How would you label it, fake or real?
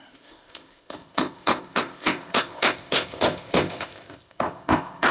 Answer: fake